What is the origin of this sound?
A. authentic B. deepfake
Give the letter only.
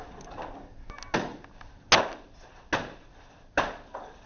A